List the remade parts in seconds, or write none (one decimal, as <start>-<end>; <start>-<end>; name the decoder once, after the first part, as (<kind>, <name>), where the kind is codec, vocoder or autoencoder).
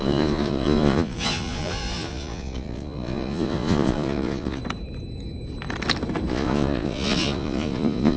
0.0-4.6 (vocoder, Vocos); 6.3-8.2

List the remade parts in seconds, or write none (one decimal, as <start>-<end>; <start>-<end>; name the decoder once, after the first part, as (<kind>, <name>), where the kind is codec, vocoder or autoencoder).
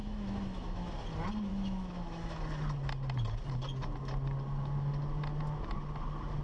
0.0-0.9 (autoencoder, DAC-VAE); 1.5-2.4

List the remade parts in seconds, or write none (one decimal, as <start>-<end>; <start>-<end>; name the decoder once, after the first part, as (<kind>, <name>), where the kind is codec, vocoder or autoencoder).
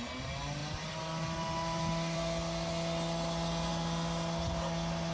none